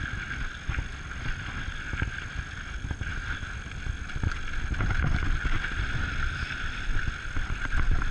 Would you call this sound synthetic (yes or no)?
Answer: no